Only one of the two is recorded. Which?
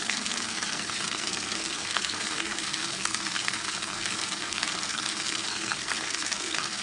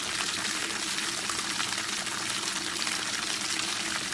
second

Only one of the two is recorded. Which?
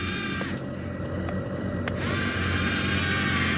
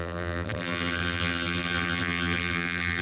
first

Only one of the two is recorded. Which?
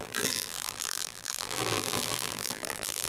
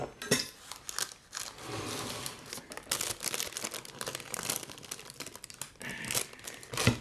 second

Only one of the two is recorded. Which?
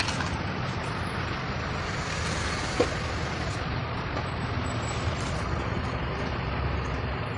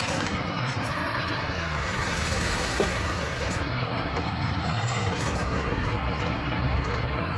first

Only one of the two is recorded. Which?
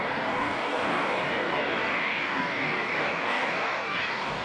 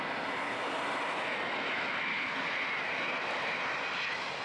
second